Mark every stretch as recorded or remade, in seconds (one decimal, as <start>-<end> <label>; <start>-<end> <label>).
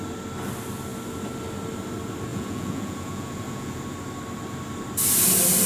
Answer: 0.0-2.3 recorded; 2.3-3.8 remade; 3.8-5.7 recorded